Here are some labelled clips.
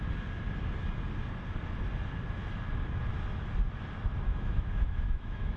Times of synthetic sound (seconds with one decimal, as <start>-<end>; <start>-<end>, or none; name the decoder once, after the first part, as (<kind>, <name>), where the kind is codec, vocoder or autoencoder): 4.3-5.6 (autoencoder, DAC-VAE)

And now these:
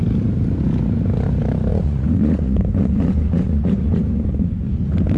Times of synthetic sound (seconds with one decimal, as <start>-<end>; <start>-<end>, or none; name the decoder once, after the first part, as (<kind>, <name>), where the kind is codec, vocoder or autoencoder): 1.7-4.8 (vocoder, Vocos)

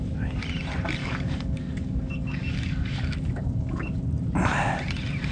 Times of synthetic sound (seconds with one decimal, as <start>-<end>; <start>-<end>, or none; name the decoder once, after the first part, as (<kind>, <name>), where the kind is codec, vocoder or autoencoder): 1.0-4.0 (codec, DAC)

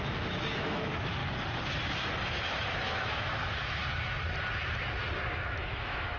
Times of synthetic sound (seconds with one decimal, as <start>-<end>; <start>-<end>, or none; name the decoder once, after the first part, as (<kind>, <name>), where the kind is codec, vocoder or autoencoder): 0.0-1.2 (autoencoder, DAC-VAE); 2.4-3.8; 5.3-6.2

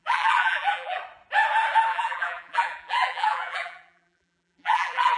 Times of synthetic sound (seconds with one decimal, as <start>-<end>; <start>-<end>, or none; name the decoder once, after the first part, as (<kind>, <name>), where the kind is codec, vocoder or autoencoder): 0.0-1.0 (vocoder, BigVGAN v2); 1.9-5.2

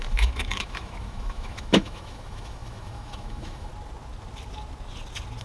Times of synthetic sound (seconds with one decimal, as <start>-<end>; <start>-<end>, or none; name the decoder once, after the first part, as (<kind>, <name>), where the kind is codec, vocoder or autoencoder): 0.0-3.7 (autoencoder, DAC-VAE)